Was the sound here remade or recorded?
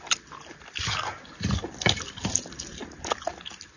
recorded